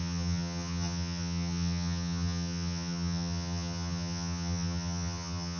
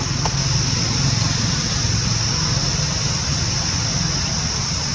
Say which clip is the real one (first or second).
second